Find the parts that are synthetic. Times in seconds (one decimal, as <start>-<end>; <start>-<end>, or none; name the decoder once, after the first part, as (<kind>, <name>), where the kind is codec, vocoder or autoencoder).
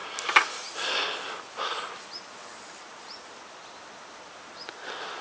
none